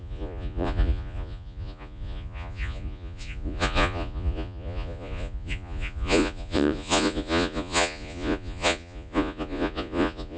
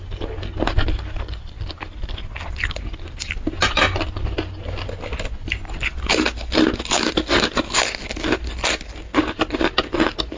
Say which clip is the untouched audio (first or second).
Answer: second